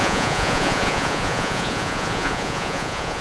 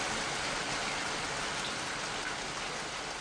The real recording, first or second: second